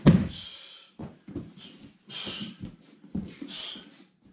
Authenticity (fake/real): real